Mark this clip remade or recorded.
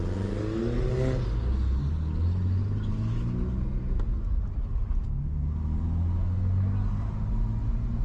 recorded